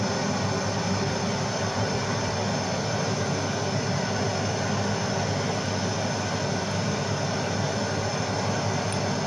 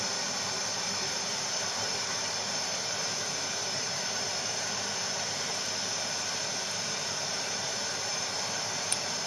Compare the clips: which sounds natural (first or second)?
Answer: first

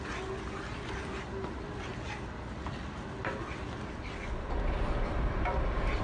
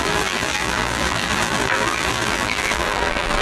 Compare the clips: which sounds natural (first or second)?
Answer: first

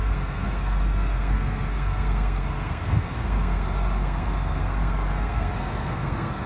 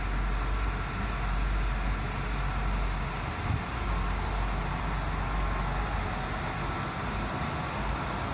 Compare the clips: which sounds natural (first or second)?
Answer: second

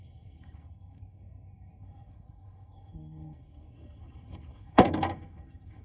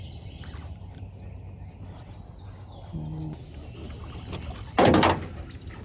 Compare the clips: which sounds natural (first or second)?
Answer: second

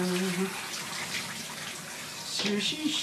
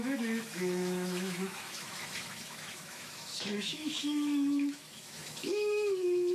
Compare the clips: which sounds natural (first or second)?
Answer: first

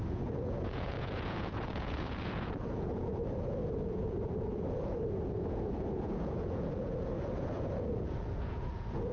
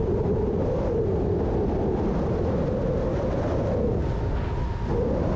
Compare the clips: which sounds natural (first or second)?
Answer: second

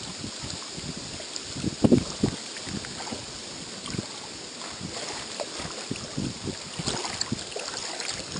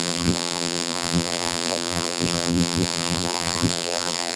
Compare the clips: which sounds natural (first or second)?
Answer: first